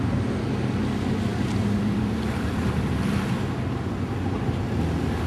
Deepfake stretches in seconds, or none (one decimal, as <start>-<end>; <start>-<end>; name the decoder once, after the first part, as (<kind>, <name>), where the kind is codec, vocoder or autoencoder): 1.3-3.0 (vocoder, BigVGAN v2)